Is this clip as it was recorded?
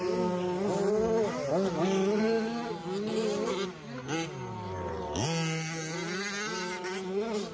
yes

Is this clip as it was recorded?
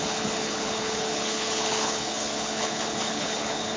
no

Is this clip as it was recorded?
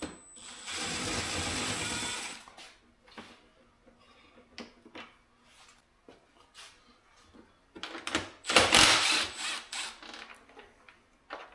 yes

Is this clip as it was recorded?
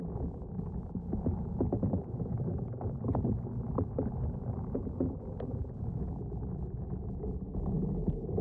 yes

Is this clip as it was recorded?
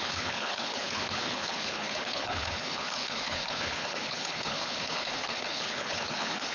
no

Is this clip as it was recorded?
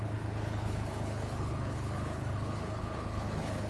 no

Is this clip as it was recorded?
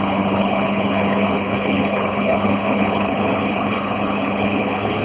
no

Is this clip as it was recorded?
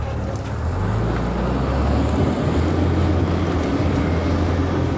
yes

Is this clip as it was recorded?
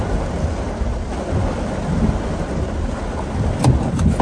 yes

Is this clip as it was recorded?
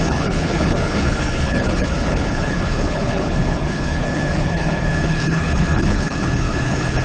no